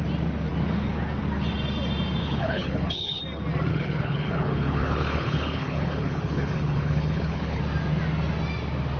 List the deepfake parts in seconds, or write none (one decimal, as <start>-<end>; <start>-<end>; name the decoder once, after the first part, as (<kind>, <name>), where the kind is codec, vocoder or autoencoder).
2.2-3.2 (codec, HILCodec); 3.7-7.6